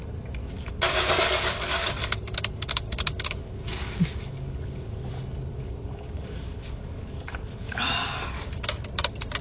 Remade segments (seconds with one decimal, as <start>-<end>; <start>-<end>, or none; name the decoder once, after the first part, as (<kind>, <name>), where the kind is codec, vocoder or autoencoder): 0.4-5.1 (codec, DAC); 5.5-8.3